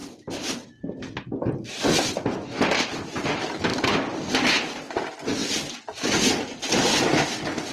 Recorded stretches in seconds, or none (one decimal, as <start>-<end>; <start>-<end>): 0.0-3.7; 4.6-7.7